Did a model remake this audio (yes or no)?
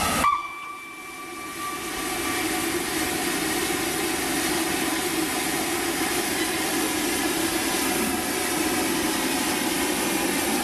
no